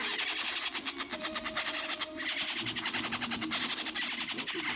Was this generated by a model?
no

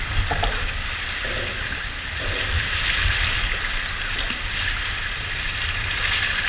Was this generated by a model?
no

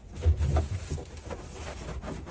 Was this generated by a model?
no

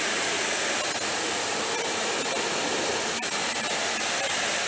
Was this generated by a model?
no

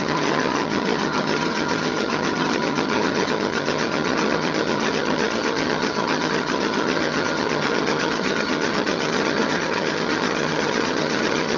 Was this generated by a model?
yes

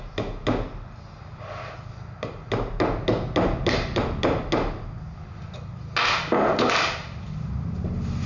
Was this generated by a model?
no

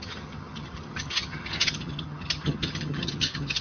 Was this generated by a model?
yes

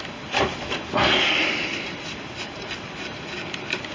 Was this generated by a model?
no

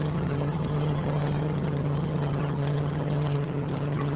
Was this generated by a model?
yes